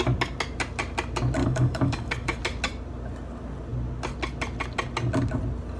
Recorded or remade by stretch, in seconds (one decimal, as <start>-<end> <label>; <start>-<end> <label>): 0.0-1.4 recorded; 1.4-2.4 remade; 2.4-5.8 recorded